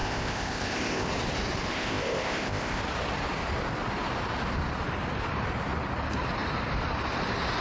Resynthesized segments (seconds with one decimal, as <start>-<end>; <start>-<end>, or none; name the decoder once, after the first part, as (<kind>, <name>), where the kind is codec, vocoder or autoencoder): 0.0-1.1 (codec, ZipCodec); 1.7-2.8